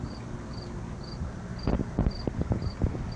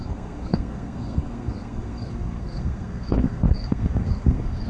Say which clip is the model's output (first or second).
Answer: second